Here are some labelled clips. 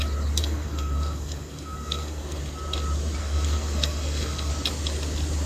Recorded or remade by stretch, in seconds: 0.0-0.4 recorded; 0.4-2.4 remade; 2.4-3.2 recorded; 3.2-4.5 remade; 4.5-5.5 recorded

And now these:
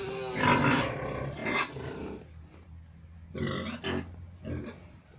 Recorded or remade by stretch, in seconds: 0.0-5.2 recorded

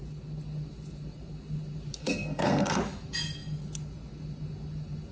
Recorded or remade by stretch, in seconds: 0.0-2.0 recorded; 2.0-2.8 remade; 2.8-5.1 recorded

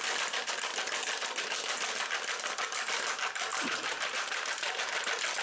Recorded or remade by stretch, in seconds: 0.0-3.5 recorded; 3.5-4.9 remade; 4.9-5.4 recorded

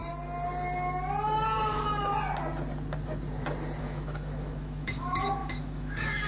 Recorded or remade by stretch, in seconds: 0.0-3.8 recorded; 3.8-6.3 remade

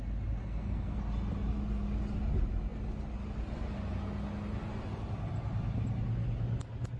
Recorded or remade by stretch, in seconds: 0.0-0.4 recorded; 0.4-1.0 remade; 1.0-7.0 recorded

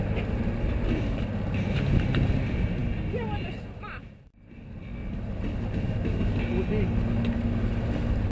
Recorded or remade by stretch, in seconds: 0.0-8.3 recorded

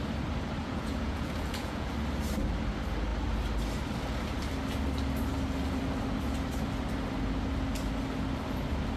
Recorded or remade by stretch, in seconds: 0.0-0.6 recorded; 0.6-1.9 remade; 1.9-9.0 recorded